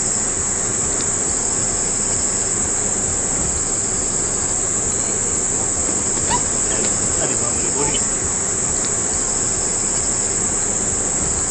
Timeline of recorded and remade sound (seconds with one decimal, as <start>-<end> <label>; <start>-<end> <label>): 0.0-0.7 recorded; 0.7-1.3 remade; 1.3-3.1 recorded; 3.1-3.9 remade; 3.9-5.8 recorded; 5.8-9.3 remade; 9.3-11.5 recorded